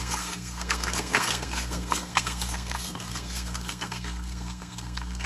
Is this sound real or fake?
fake